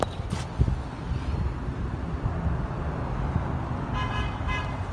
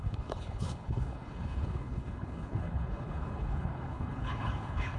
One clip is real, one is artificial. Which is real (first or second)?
first